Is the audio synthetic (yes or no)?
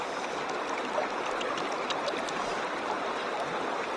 no